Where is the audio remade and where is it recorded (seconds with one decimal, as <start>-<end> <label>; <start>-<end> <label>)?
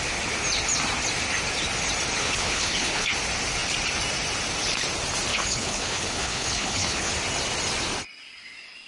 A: 0.0-2.2 recorded; 2.2-3.1 remade; 3.1-5.3 recorded; 5.3-7.1 remade; 7.1-8.9 recorded